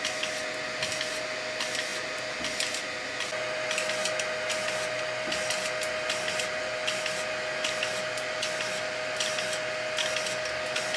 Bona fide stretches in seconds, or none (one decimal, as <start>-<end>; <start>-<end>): 0.0-11.0